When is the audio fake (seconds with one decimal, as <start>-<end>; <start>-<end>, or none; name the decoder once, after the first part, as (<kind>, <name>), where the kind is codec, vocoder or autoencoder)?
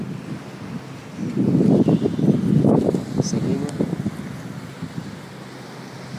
none